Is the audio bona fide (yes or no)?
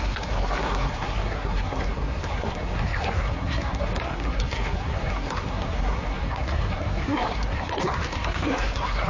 no